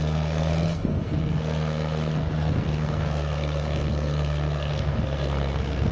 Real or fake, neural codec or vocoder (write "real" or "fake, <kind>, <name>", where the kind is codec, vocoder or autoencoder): fake, codec, SNAC